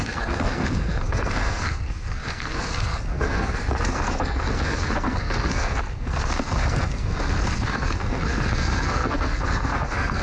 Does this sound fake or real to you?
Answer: fake